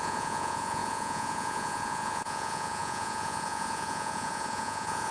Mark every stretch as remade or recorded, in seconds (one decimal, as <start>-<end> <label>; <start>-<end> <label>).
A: 0.0-5.1 remade